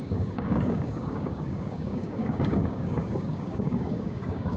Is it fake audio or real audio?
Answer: fake